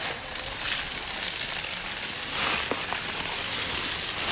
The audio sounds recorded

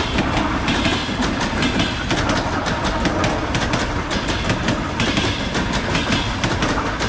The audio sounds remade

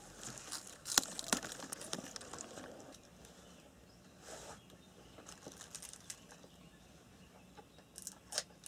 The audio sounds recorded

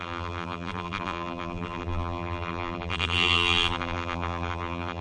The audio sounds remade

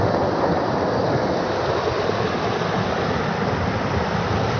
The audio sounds recorded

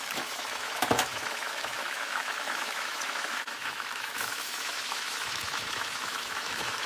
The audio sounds remade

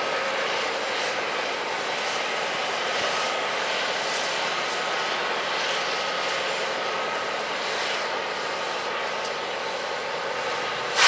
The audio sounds recorded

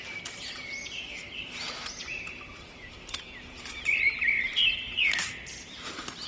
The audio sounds remade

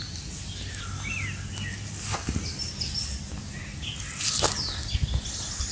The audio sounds recorded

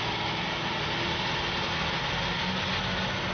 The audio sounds recorded